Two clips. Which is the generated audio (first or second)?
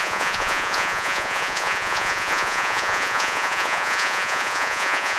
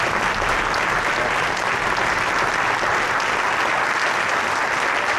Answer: first